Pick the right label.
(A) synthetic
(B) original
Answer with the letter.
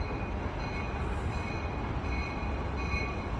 B